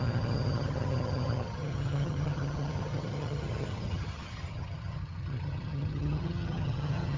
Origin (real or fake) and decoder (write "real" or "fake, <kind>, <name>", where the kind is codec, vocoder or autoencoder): fake, vocoder, HiFi-GAN